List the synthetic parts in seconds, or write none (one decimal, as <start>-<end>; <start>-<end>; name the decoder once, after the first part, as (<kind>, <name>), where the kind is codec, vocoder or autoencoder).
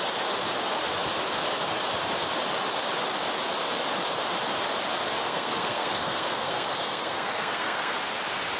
5.1-8.0 (codec, SNAC)